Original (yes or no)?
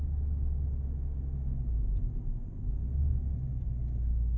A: yes